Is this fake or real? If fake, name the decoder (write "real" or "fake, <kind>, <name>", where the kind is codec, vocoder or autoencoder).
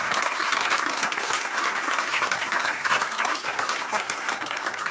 fake, codec, SNAC